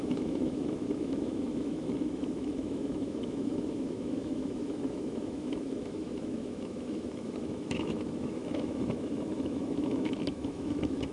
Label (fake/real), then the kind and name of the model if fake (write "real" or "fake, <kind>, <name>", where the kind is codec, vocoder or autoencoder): fake, autoencoder, DAC-VAE